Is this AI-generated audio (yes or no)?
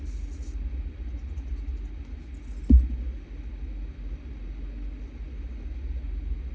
no